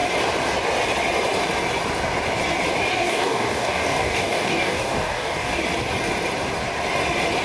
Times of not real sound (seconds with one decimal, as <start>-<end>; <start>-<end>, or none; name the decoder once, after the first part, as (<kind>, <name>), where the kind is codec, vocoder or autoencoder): 2.9-5.6 (codec, DAC)